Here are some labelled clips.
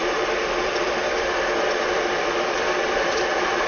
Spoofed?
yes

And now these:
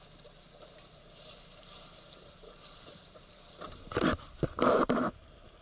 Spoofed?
yes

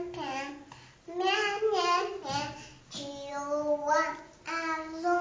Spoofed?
no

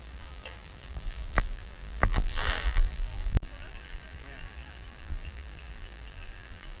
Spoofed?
yes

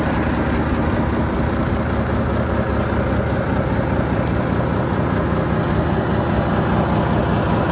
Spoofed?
no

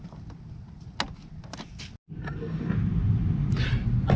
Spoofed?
no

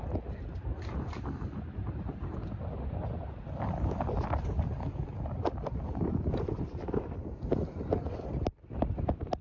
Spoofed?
yes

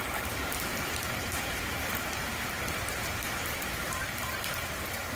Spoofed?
yes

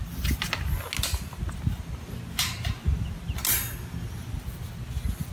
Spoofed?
no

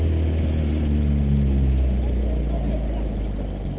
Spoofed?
no